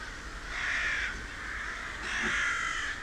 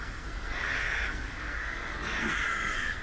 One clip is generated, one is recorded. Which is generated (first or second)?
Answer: second